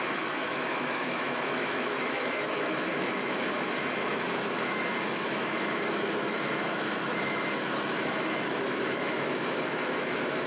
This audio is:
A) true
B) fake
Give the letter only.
B